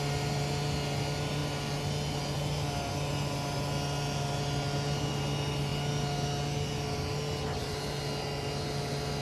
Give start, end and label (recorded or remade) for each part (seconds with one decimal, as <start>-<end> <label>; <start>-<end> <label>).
0.0-9.2 recorded